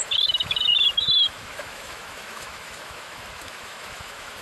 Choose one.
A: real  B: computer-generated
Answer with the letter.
B